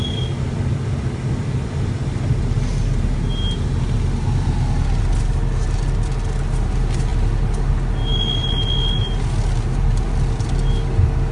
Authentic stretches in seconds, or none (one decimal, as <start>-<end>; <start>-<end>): 0.0-11.3